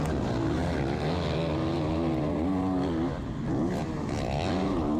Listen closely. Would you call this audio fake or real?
real